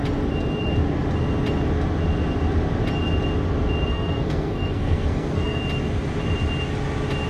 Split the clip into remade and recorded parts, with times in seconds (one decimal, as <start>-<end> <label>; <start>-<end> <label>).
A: 0.0-3.9 recorded; 3.9-5.6 remade; 5.6-7.3 recorded